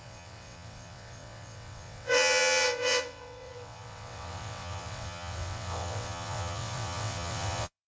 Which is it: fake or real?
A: fake